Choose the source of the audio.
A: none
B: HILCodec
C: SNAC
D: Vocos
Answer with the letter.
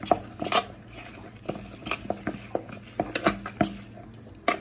A